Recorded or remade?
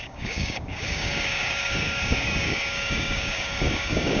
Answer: remade